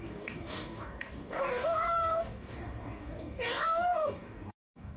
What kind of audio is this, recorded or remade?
remade